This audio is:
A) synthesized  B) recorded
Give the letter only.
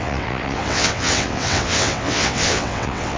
A